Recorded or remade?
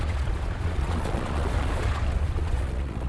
remade